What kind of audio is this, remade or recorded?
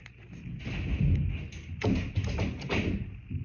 recorded